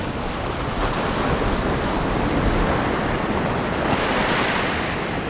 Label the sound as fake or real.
real